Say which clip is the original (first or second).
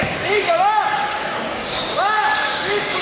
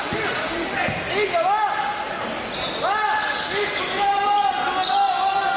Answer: second